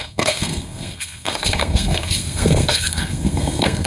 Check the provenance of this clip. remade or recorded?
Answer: remade